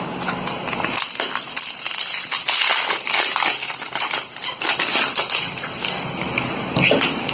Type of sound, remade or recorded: recorded